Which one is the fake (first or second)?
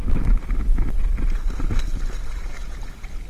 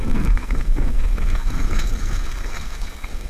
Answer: second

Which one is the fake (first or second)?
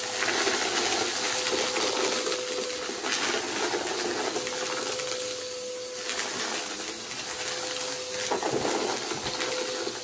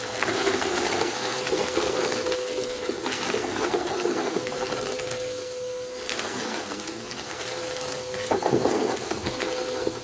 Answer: second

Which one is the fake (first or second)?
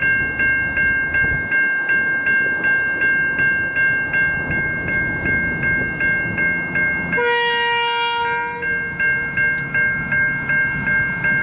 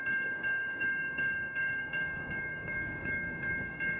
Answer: second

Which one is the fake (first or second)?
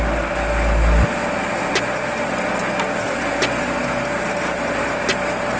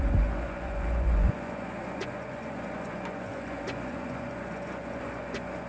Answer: second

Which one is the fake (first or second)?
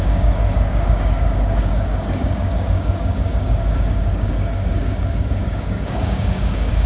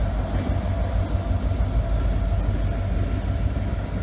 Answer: first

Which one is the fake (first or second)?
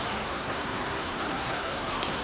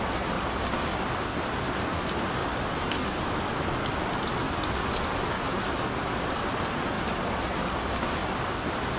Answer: first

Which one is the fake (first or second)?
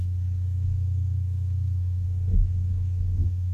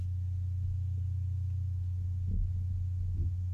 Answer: first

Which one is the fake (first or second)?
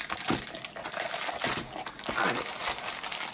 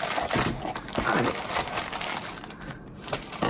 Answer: second